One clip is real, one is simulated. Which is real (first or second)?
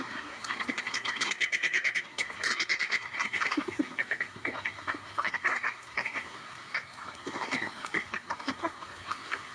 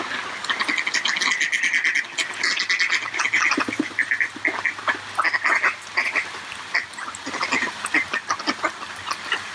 second